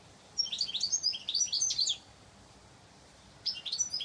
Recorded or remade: recorded